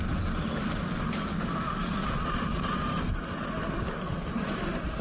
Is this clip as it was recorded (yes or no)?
yes